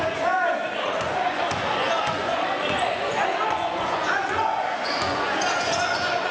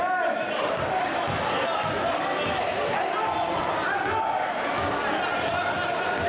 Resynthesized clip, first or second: first